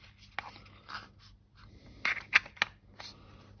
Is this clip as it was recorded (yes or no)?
yes